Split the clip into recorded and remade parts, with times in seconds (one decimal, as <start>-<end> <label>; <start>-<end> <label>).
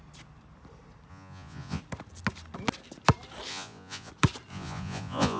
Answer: 0.0-1.1 recorded; 1.1-1.8 remade; 1.8-3.5 recorded; 3.5-4.1 remade; 4.1-4.5 recorded; 4.5-5.4 remade